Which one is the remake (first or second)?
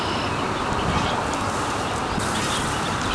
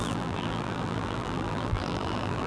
second